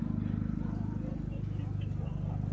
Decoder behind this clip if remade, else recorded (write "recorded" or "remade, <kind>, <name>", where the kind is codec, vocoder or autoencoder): recorded